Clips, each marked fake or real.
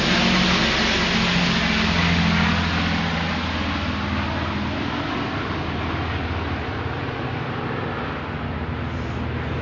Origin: real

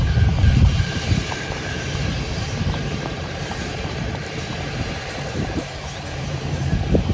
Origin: fake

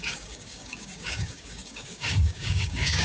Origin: fake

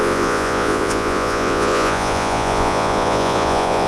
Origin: fake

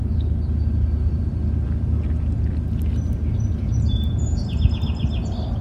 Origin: fake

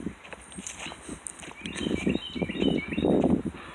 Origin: real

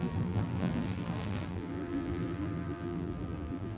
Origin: fake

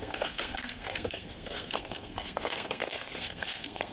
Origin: fake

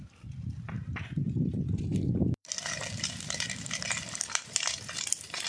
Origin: fake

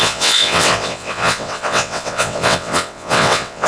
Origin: fake